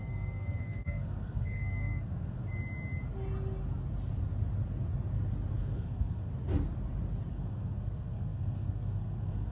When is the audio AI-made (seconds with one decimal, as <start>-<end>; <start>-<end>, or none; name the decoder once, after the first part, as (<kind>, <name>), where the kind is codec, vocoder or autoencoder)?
0.0-2.4 (codec, SNAC); 5.6-6.3; 7.3-9.5